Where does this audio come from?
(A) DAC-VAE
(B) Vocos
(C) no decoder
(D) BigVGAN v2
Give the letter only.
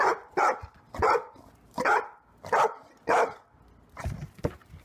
C